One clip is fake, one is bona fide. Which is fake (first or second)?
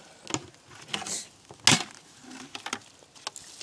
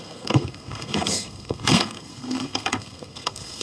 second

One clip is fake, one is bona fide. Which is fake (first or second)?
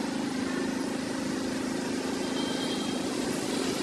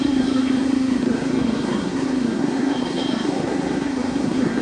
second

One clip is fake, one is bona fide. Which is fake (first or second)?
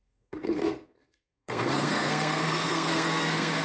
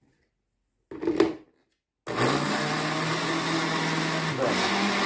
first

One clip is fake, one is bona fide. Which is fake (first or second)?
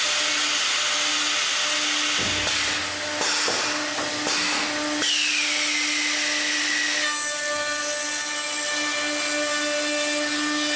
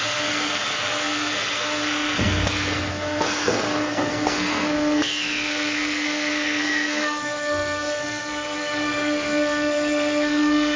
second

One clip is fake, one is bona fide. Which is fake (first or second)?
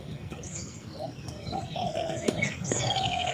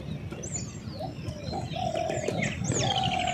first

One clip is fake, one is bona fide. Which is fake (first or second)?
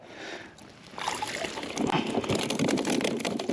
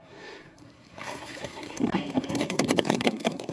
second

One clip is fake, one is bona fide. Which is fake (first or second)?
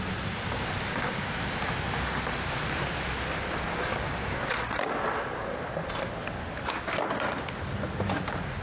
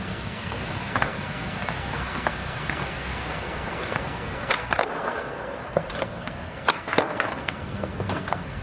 second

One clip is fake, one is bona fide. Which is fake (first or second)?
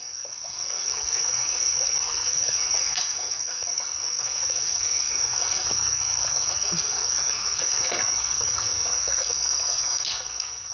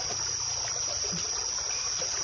first